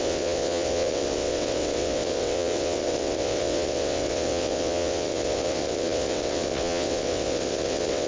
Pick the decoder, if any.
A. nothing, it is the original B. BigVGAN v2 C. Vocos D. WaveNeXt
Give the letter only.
D